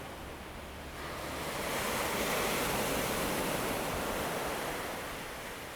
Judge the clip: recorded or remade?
recorded